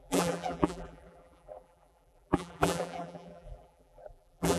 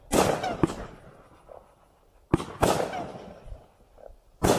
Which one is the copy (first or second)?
first